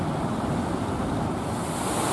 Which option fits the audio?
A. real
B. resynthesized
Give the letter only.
A